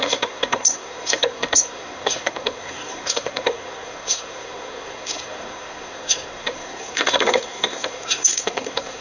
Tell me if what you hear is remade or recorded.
remade